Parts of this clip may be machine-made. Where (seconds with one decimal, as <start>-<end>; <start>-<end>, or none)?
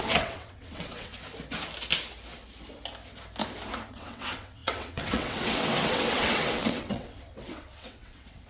0.0-1.1; 3.9-8.5